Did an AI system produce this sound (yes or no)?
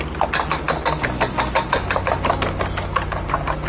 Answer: no